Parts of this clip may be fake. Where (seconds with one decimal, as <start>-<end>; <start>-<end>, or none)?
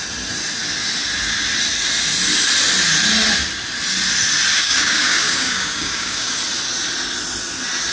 4.6-6.4